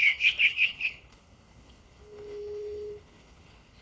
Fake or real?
fake